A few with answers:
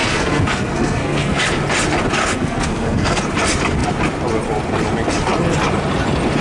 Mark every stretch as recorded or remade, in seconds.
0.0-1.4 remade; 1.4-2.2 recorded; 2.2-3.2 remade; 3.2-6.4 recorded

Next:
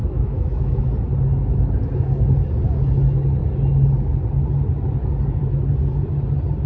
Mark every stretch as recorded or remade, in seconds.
0.0-0.8 remade; 0.8-6.7 recorded

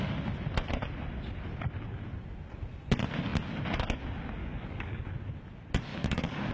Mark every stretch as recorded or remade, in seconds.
0.0-4.4 recorded; 4.4-5.1 remade; 5.1-5.9 recorded; 5.9-6.5 remade